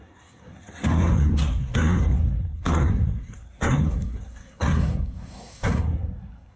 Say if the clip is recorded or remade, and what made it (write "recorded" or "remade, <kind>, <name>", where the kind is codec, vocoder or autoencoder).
remade, codec, SNAC